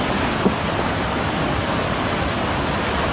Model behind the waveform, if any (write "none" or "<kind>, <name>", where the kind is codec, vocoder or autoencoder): none